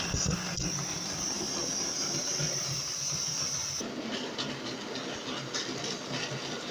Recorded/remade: recorded